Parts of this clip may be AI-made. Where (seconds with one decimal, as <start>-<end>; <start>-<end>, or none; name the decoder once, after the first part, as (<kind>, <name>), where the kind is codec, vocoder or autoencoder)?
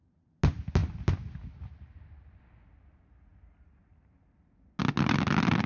none